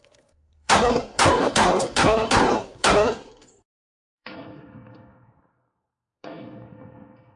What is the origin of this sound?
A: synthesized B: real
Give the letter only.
A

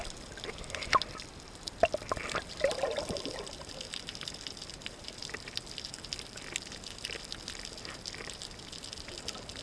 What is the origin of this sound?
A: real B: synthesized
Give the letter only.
A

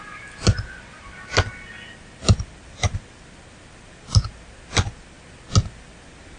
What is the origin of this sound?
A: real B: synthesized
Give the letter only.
A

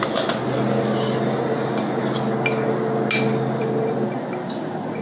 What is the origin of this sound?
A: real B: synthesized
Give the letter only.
A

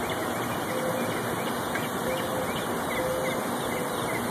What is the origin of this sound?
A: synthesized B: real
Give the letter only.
B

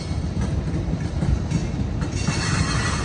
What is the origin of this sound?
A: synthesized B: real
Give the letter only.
B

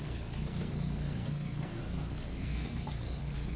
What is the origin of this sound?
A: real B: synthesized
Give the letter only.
B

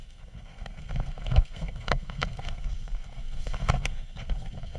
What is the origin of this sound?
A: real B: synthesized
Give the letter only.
B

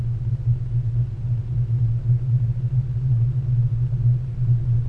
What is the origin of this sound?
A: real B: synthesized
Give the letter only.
A